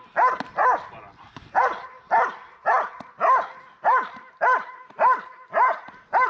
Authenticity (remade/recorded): recorded